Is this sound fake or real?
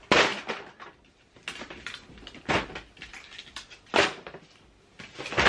real